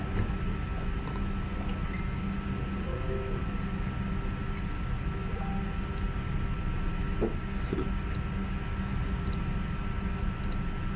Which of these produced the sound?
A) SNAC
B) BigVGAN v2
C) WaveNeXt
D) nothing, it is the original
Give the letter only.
D